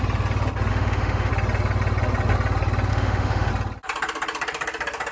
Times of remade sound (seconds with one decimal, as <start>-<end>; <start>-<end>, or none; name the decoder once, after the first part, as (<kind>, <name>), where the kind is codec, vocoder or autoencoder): 0.7-1.3 (autoencoder, DAC-VAE); 2.9-3.5